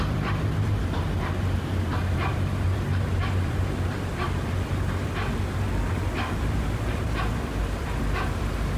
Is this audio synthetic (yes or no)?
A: yes